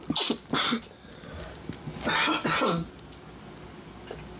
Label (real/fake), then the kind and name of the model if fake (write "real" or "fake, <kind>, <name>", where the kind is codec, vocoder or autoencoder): real